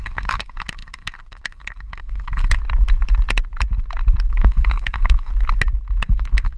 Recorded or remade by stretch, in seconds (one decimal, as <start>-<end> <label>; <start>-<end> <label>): 0.0-2.6 remade; 2.6-4.3 recorded; 4.3-5.3 remade; 5.3-6.0 recorded; 6.0-6.6 remade